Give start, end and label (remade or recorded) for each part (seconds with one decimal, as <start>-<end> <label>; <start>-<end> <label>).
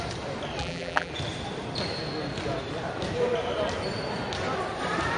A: 0.0-0.6 recorded; 0.6-1.1 remade; 1.1-5.2 recorded